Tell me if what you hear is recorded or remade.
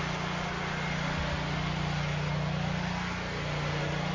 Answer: recorded